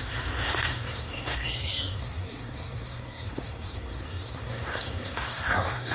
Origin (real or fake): fake